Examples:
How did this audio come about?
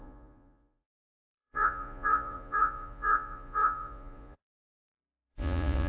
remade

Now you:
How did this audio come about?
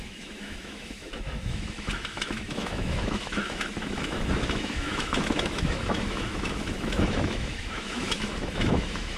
remade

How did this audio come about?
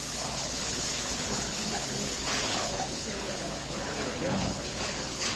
remade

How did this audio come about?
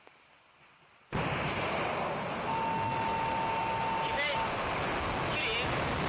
recorded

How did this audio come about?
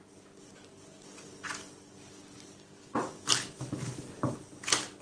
recorded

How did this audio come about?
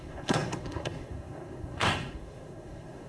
remade